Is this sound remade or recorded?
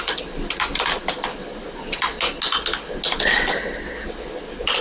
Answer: recorded